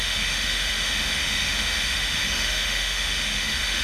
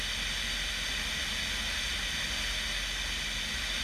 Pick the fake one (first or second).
first